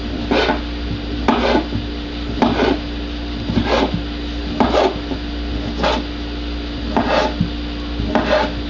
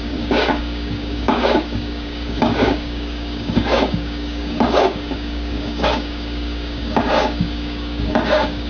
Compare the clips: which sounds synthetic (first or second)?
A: second